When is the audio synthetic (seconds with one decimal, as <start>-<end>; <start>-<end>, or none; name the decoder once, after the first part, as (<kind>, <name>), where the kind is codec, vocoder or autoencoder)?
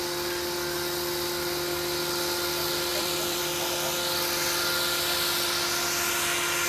2.9-3.4 (vocoder, BigVGAN v2)